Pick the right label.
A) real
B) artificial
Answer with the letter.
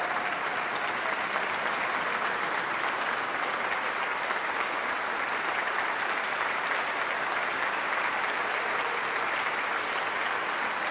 A